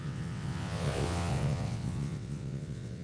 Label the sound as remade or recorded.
remade